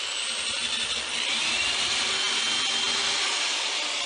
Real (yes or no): yes